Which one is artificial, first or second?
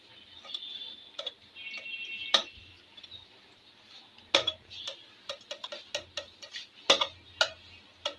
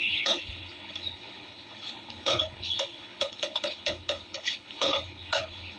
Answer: second